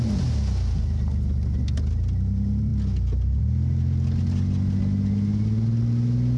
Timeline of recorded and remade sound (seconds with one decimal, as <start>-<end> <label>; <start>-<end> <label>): 0.0-6.4 recorded